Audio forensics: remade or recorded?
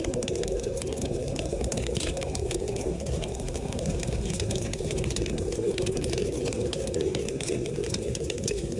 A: remade